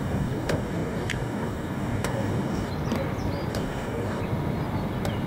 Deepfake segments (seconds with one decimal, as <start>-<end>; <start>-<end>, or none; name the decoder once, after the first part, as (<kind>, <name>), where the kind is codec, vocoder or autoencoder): 0.0-2.7 (codec, DAC); 3.5-4.2